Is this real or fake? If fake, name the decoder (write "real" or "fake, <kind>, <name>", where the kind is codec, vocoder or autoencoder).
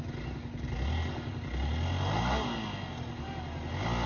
real